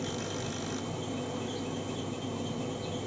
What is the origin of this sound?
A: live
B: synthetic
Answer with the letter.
A